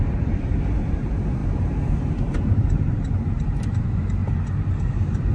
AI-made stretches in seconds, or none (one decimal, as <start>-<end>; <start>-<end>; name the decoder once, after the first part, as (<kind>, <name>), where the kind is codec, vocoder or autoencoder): 0.0-4.2 (vocoder, BigVGAN v2); 4.8-5.3